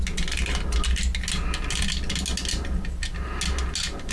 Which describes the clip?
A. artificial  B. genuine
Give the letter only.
B